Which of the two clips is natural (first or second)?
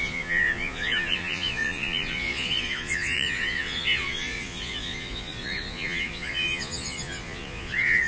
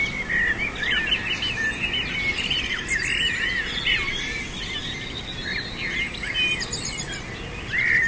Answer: second